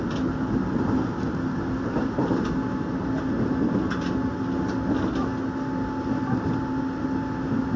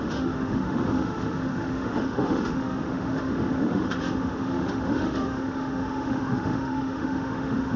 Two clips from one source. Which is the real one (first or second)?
first